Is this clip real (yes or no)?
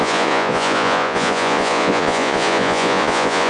no